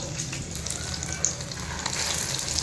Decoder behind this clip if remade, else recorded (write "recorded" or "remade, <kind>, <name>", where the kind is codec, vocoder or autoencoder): recorded